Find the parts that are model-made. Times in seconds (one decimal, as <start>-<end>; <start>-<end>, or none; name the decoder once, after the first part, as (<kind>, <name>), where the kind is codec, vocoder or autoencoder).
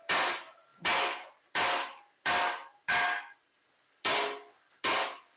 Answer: none